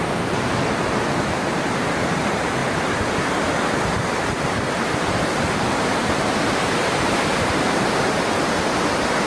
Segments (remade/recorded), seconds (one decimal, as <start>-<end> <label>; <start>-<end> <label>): 0.0-2.6 remade; 2.6-3.9 recorded; 3.9-9.3 remade